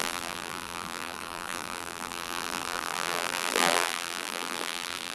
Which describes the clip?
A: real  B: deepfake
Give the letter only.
B